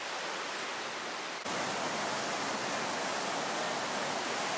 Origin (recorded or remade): recorded